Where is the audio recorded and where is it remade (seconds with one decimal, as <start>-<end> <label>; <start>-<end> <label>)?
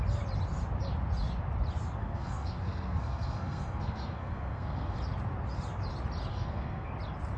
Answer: 0.0-2.0 recorded; 2.0-5.0 remade; 5.0-6.3 recorded; 6.3-6.9 remade; 6.9-7.4 recorded